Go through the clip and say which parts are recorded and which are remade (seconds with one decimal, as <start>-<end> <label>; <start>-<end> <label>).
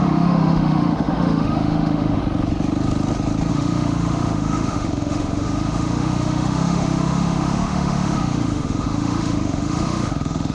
0.0-2.2 remade; 2.2-3.5 recorded; 3.5-10.5 remade